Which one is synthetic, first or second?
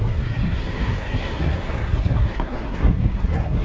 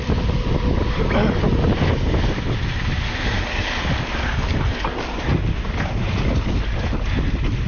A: first